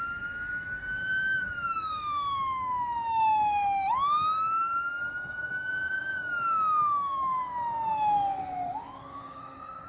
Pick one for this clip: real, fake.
fake